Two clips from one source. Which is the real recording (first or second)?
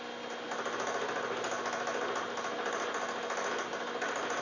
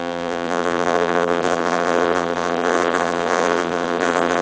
first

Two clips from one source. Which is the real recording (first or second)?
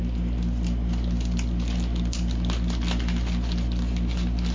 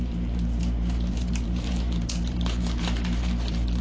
first